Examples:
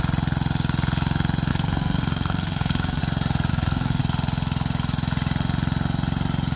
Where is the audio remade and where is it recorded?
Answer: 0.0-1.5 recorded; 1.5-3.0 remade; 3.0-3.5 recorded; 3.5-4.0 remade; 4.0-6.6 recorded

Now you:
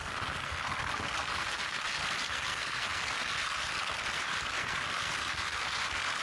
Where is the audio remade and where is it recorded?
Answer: 0.0-6.2 remade

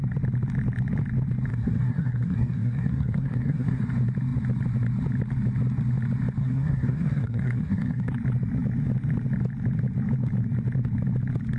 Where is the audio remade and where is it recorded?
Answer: 0.0-1.5 recorded; 1.5-3.8 remade; 3.8-6.4 recorded; 6.4-8.1 remade; 8.1-11.6 recorded

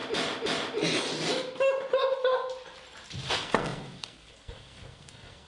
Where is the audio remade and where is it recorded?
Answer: 0.0-3.3 recorded; 3.3-5.5 remade

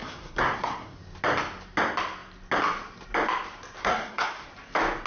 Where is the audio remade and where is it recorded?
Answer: 0.0-1.0 remade; 1.0-3.8 recorded; 3.8-4.5 remade; 4.5-5.1 recorded